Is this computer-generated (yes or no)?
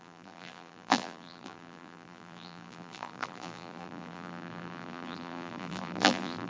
yes